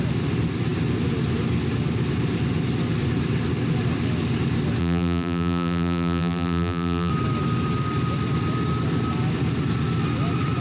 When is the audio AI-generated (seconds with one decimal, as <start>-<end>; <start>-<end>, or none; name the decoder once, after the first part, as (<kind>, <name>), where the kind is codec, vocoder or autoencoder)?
4.8-7.1 (vocoder, BigVGAN v2)